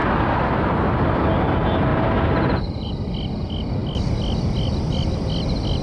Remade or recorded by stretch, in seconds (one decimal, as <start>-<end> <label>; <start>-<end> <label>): 0.0-1.9 recorded; 1.9-2.9 remade; 2.9-5.8 recorded